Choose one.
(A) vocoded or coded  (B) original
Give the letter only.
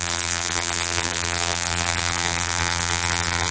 A